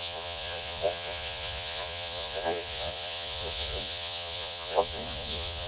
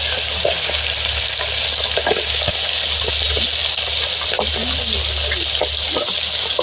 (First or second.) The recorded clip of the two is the second